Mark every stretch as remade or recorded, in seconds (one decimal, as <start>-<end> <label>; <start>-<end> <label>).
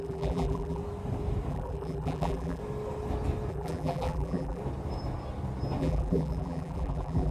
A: 0.0-0.8 remade; 0.8-1.5 recorded; 1.5-2.6 remade; 2.6-3.5 recorded; 3.5-4.6 remade; 4.6-5.8 recorded; 5.8-7.3 remade